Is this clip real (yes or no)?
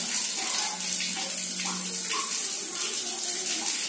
yes